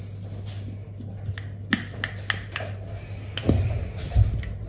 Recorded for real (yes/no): yes